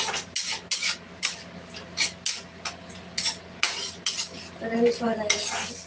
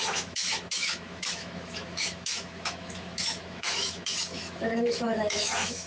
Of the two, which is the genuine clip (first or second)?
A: first